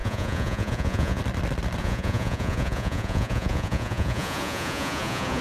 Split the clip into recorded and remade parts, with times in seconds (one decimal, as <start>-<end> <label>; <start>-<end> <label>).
0.0-1.2 remade; 1.2-1.8 recorded; 1.8-5.4 remade